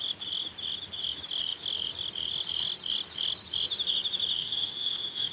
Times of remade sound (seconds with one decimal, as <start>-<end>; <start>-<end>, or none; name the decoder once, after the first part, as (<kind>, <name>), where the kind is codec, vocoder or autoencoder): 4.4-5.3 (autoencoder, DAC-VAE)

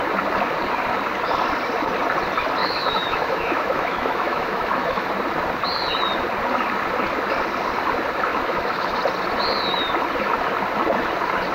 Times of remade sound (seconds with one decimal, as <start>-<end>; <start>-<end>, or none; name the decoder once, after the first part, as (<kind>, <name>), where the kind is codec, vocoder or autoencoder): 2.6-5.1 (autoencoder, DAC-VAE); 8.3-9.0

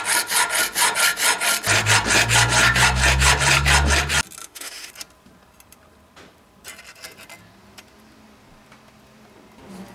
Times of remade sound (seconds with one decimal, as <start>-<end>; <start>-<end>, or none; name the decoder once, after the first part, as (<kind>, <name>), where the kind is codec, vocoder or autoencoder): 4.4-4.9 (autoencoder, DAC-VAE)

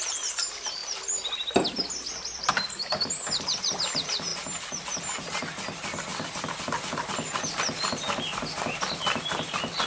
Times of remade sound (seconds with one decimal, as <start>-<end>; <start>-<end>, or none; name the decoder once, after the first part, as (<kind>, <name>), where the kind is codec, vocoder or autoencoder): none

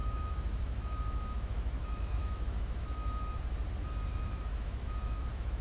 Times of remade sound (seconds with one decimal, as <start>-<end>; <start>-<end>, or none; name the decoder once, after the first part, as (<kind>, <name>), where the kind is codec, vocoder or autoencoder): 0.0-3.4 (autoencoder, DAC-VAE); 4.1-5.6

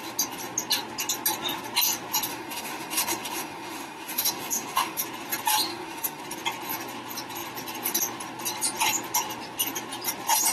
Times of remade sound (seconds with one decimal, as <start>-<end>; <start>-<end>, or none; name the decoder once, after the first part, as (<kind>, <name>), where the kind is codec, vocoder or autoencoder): 2.3-5.0 (autoencoder, DAC-VAE); 5.7-6.2